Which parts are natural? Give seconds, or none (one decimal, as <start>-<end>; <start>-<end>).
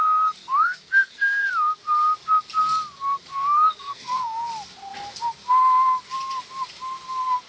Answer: 1.5-3.3; 4.5-7.5